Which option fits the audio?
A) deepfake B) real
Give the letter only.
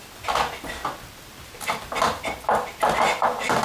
B